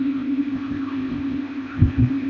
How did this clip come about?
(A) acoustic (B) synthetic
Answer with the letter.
B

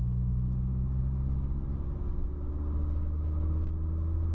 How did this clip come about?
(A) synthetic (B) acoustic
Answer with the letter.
B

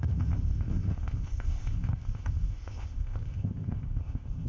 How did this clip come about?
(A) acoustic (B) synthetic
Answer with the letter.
B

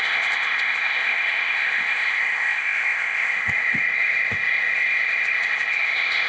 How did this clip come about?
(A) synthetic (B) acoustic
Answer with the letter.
A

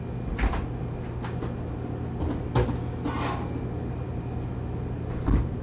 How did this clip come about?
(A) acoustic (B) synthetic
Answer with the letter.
A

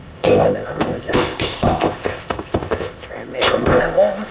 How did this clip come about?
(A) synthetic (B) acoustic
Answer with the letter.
A